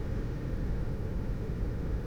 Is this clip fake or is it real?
fake